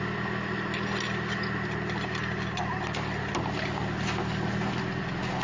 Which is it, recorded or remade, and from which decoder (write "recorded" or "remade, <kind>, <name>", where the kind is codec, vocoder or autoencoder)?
recorded